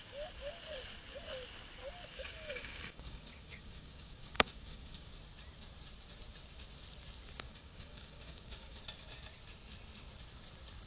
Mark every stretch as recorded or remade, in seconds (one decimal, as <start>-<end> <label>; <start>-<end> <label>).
0.0-2.1 recorded; 2.1-5.1 remade; 5.1-7.5 recorded; 7.5-8.8 remade; 8.8-10.9 recorded